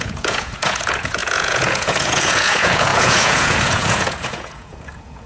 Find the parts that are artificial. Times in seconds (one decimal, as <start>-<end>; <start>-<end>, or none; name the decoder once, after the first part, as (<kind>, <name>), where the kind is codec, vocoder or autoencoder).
0.0-5.3 (vocoder, Vocos)